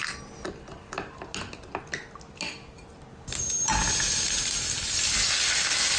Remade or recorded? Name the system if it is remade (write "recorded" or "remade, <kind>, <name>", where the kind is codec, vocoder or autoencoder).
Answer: recorded